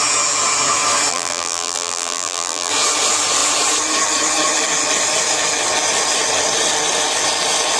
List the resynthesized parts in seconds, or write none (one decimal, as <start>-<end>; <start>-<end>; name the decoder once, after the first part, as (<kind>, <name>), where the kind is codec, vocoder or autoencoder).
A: 1.1-2.7 (vocoder, BigVGAN v2)